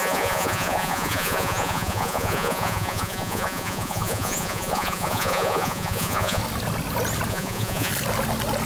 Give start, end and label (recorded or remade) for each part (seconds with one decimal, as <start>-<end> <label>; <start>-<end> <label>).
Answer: 0.0-6.4 remade; 6.4-7.3 recorded; 7.3-7.9 remade; 7.9-8.7 recorded

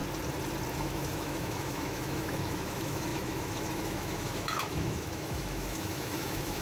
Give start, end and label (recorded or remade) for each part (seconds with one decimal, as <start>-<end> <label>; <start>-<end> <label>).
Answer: 0.0-0.7 recorded; 0.7-6.6 remade

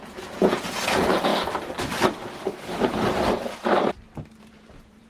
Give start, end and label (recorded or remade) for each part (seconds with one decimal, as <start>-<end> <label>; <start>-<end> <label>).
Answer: 0.0-1.3 remade; 1.3-4.4 recorded; 4.4-5.1 remade

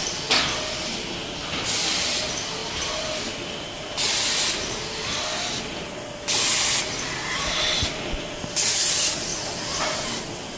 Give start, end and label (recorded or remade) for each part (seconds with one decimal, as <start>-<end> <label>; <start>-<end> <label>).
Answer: 0.0-10.6 recorded

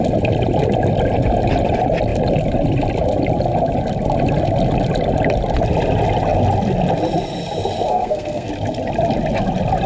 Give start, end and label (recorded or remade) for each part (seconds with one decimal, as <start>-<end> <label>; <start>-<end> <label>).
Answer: 0.0-7.9 recorded; 7.9-8.5 remade; 8.5-9.9 recorded

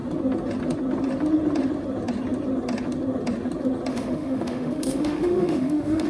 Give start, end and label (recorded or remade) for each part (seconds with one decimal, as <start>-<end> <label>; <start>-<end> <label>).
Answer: 0.0-3.9 recorded; 3.9-6.1 remade

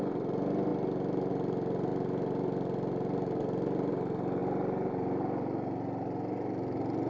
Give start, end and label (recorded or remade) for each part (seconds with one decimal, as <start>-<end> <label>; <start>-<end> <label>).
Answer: 0.0-7.1 recorded